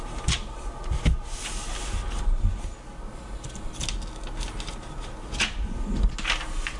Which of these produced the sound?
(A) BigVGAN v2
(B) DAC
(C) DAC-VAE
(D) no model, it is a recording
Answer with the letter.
D